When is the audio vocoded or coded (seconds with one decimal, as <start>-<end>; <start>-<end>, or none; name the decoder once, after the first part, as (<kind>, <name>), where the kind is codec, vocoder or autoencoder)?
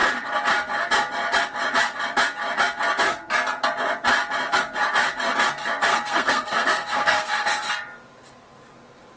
5.9-7.7 (codec, SNAC)